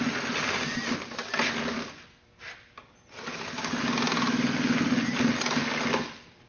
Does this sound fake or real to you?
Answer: real